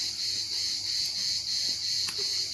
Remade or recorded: recorded